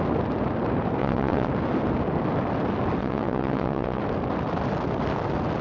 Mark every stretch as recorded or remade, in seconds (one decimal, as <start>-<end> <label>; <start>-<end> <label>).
0.0-1.0 recorded; 1.0-1.5 remade; 1.5-3.0 recorded; 3.0-4.0 remade; 4.0-5.6 recorded